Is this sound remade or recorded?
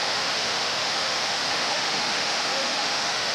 remade